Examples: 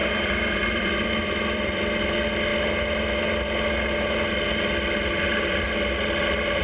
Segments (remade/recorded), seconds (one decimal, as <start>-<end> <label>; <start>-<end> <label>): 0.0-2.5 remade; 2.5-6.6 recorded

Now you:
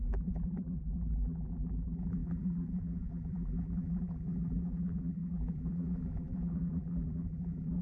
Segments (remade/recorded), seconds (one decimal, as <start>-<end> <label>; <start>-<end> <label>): 0.0-7.8 remade

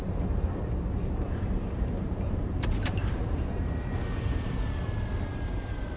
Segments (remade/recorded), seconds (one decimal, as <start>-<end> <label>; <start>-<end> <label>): 0.0-3.6 remade; 3.6-6.0 recorded

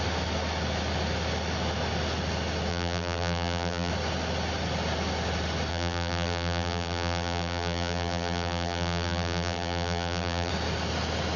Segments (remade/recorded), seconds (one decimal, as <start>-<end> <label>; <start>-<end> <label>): 0.0-2.7 recorded; 2.7-3.9 remade; 3.9-5.7 recorded; 5.7-10.5 remade; 10.5-11.4 recorded

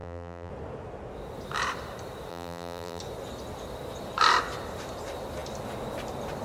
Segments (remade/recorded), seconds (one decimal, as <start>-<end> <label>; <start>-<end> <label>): 0.0-0.5 remade; 0.5-2.3 recorded; 2.3-3.0 remade; 3.0-6.4 recorded

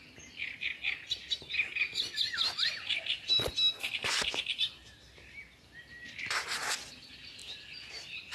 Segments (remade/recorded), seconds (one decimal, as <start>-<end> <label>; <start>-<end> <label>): 0.0-8.3 recorded

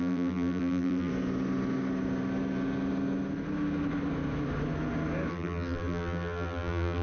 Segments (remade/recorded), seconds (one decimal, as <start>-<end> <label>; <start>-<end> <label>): 0.0-1.1 remade; 1.1-5.3 recorded; 5.3-7.0 remade

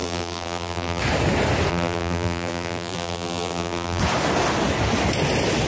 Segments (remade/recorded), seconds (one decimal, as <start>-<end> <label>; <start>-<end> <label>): 0.0-1.0 remade; 1.0-1.7 recorded; 1.7-4.0 remade; 4.0-5.7 recorded